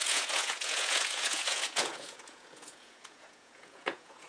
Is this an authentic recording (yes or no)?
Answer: no